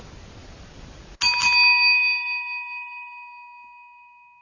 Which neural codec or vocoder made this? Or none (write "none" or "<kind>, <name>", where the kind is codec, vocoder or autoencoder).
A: none